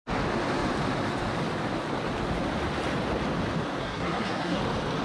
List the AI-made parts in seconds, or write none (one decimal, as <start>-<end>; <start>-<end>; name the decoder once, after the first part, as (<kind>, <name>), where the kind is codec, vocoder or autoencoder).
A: 3.8-4.6 (codec, SNAC)